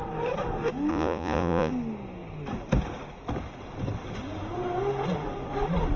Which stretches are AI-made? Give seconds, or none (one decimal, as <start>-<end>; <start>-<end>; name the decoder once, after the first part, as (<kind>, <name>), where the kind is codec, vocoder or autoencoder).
0.9-1.7 (vocoder, Vocos)